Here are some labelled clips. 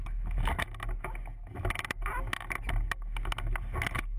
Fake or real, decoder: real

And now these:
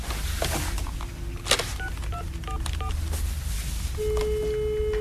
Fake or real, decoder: real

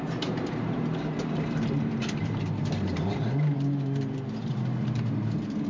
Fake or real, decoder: fake, vocoder, BigVGAN v2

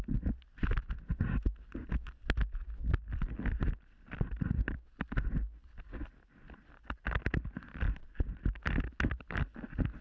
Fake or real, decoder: real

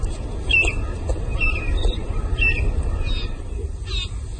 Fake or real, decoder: real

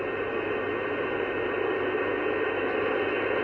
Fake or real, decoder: real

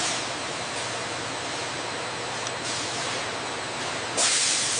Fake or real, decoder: real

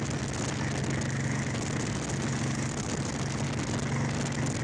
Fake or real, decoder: real